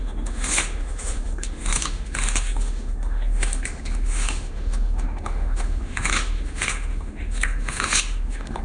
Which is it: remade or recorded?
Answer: remade